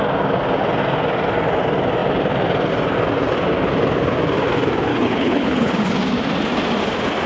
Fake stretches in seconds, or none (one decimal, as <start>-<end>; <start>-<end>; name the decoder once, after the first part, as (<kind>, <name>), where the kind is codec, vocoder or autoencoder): 4.9-5.7 (codec, HILCodec)